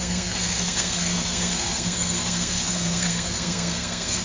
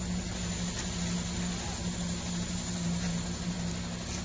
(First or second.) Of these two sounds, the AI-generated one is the first